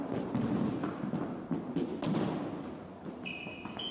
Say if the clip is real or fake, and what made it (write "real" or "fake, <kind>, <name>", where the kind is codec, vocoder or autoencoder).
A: real